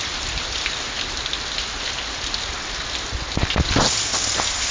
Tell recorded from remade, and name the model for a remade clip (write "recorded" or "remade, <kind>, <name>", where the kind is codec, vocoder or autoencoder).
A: recorded